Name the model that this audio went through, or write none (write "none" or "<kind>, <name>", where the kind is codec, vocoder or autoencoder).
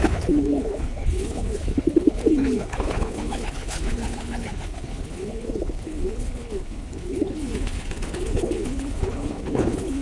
codec, HILCodec